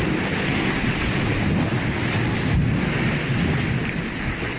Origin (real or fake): real